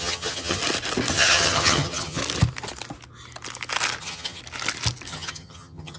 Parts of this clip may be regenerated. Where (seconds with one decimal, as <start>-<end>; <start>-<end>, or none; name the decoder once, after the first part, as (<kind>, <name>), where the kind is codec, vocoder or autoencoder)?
0.0-0.6 (vocoder, HiFi-GAN); 1.1-2.2; 4.0-4.4; 5.1-6.0